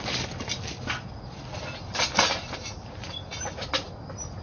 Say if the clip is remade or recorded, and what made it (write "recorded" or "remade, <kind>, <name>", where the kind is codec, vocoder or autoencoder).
recorded